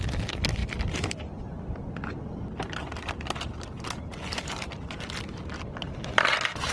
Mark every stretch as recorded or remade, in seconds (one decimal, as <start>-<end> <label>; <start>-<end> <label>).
0.0-6.7 recorded